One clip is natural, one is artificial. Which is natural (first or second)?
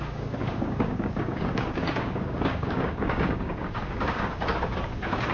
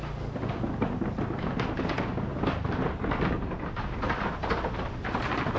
second